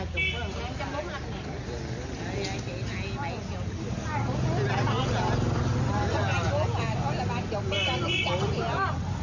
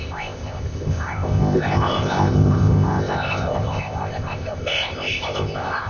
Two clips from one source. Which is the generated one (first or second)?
second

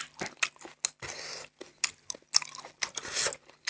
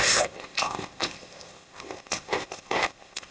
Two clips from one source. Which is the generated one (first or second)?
second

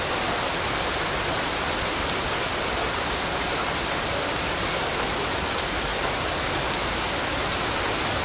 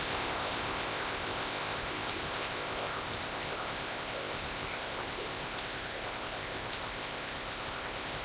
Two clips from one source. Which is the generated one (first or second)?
second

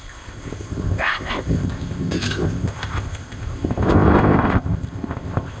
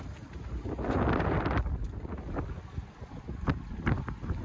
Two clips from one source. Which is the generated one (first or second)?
first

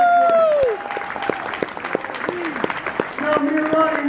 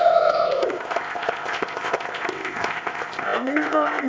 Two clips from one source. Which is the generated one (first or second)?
second